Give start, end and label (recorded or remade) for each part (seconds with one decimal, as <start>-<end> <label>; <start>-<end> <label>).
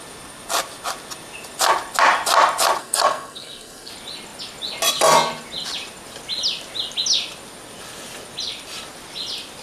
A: 0.0-2.8 recorded; 2.8-3.9 remade; 3.9-9.6 recorded